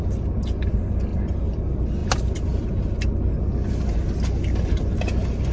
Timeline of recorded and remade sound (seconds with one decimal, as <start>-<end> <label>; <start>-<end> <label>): 0.0-1.1 recorded; 1.1-1.6 remade; 1.6-5.5 recorded